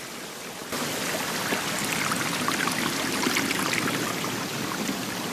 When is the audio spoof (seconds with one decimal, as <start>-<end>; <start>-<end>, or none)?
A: none